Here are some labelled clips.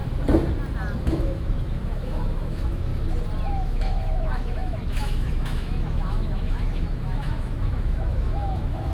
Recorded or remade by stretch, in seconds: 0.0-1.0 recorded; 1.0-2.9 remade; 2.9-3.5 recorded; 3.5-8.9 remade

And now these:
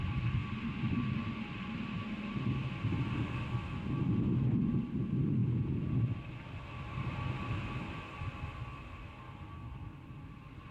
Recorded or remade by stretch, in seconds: 0.0-5.4 recorded; 5.4-6.0 remade; 6.0-10.7 recorded